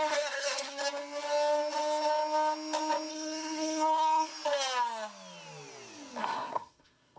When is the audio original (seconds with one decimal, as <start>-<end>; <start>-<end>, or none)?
0.8-3.1; 4.3-6.2